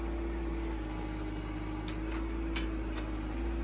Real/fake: real